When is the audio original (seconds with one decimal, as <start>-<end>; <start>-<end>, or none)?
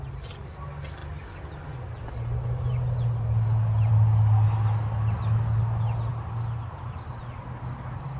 0.0-8.2